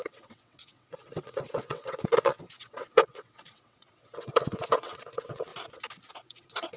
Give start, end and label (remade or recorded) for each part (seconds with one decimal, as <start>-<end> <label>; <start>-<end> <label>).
0.0-5.5 remade; 5.5-6.1 recorded; 6.1-6.8 remade